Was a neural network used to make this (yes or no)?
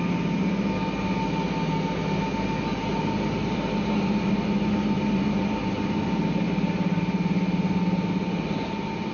no